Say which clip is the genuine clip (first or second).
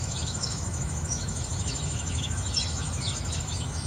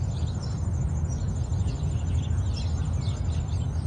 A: second